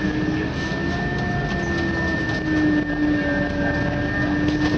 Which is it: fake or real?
real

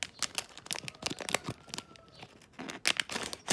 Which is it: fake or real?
real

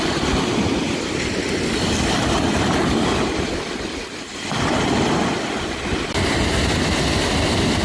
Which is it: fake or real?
real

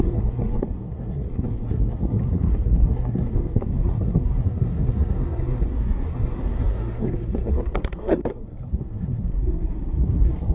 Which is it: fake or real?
fake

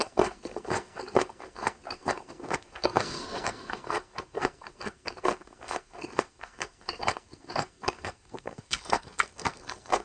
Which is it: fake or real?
fake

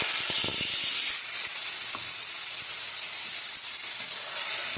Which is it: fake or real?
real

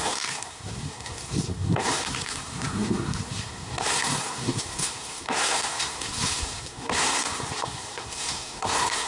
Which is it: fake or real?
fake